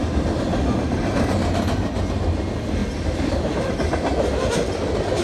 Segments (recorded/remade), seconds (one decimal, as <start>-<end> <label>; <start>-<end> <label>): 0.0-0.5 recorded; 0.5-1.3 remade; 1.3-5.2 recorded

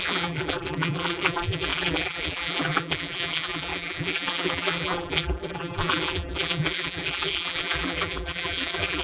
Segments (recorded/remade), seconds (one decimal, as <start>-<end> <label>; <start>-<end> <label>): 0.0-9.0 remade